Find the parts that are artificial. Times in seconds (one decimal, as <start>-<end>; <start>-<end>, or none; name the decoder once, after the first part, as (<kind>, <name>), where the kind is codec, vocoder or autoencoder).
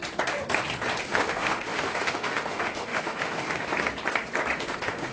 1.0-3.7 (autoencoder, DAC-VAE); 4.6-5.1